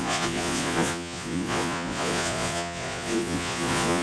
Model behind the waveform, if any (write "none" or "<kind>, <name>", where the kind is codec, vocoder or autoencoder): vocoder, Vocos